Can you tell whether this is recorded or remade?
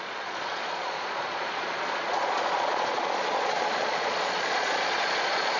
remade